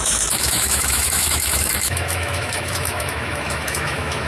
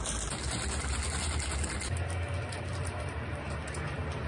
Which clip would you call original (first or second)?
second